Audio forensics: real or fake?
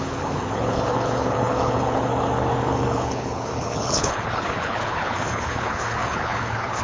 fake